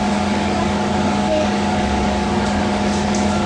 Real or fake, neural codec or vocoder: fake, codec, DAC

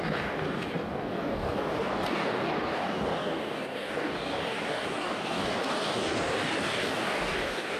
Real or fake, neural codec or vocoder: fake, codec, DAC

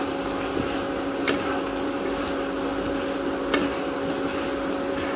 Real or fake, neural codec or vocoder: real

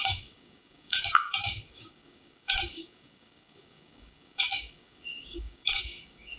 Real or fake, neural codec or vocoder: fake, codec, DAC